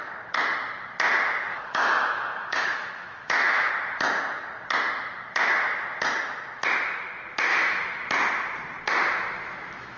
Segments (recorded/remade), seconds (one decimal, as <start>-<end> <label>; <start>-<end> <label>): 0.0-1.5 recorded; 1.5-3.7 remade; 3.7-7.5 recorded; 7.5-8.1 remade; 8.1-10.0 recorded